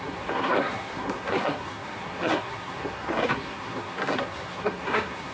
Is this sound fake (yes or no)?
yes